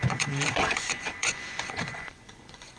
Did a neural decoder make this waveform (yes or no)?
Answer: yes